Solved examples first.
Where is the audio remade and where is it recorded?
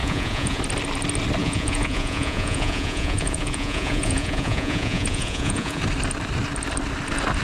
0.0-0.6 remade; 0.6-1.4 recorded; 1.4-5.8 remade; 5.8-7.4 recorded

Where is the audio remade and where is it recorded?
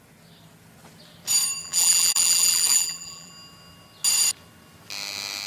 0.0-1.6 recorded; 1.6-3.3 remade; 3.3-5.5 recorded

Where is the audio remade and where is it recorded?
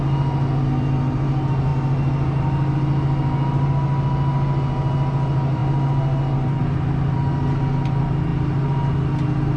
0.0-9.6 recorded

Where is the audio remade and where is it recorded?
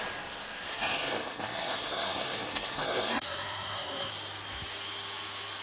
0.0-0.7 recorded; 0.7-4.1 remade; 4.1-5.6 recorded